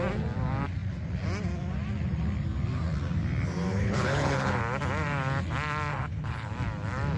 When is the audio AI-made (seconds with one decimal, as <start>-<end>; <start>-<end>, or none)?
3.7-4.6; 5.9-6.5

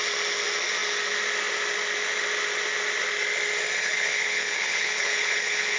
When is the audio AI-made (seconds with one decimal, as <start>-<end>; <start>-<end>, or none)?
3.8-5.8

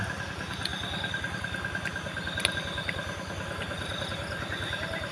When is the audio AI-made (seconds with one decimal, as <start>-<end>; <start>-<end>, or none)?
none